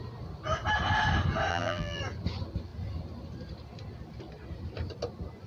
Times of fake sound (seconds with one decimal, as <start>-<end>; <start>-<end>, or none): 1.5-2.0